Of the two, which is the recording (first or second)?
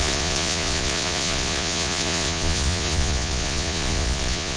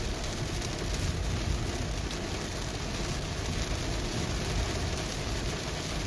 second